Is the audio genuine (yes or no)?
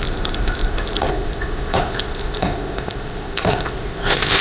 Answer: no